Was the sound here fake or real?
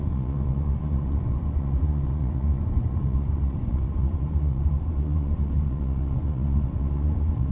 fake